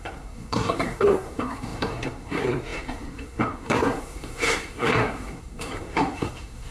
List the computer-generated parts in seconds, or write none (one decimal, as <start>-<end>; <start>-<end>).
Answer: 0.0-6.7